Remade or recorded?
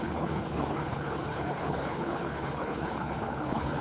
remade